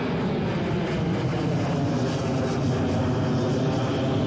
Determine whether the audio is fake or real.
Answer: real